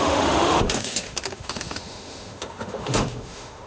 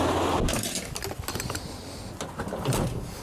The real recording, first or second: second